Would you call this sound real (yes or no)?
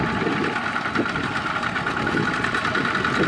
yes